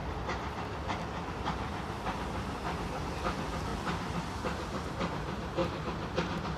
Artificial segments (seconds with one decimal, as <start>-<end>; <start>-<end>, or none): none